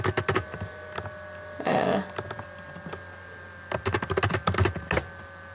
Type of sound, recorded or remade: recorded